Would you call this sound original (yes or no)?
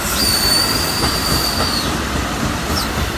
no